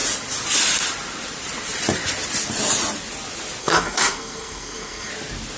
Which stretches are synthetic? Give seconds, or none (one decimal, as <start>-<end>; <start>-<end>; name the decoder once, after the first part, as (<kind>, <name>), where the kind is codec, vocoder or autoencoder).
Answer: 3.6-5.1 (codec, SNAC)